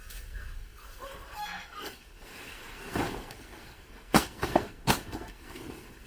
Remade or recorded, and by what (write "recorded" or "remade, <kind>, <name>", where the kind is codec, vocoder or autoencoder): remade, codec, SNAC